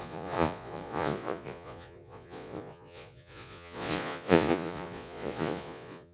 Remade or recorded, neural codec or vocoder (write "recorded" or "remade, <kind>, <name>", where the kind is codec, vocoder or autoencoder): remade, vocoder, Vocos